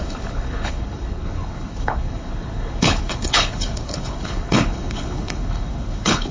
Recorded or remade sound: remade